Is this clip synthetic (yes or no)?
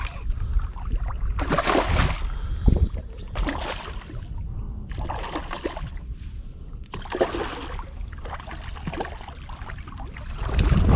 no